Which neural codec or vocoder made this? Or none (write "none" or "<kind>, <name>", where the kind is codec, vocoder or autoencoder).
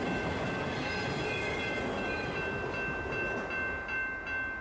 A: none